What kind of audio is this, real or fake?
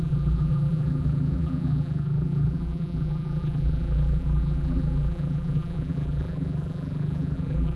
fake